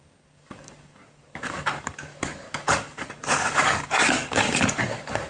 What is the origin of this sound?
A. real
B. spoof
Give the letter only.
B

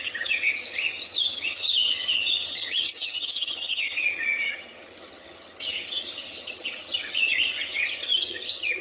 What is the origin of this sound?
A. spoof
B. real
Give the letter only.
A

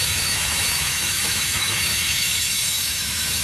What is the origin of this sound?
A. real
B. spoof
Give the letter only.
B